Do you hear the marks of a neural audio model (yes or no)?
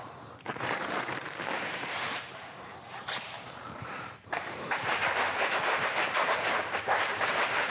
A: yes